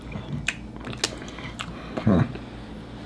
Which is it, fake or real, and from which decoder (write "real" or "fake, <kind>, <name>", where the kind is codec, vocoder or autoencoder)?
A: real